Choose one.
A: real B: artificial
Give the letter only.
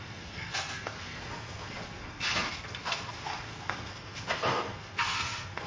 B